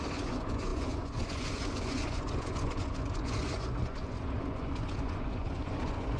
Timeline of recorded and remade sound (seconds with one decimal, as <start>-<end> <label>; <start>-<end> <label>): 0.0-6.2 remade